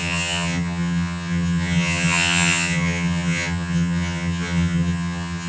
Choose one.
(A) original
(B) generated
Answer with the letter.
B